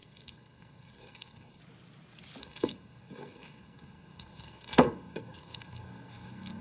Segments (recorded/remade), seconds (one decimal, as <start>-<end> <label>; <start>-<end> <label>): 0.0-1.6 remade; 1.6-2.4 recorded; 2.4-6.6 remade

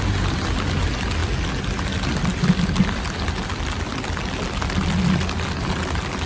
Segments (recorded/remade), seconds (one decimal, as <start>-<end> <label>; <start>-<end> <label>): 0.0-6.3 recorded

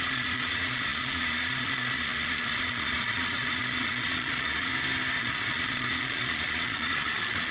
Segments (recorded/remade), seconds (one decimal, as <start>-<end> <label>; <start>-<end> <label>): 0.0-4.7 remade; 4.7-5.2 recorded; 5.2-7.5 remade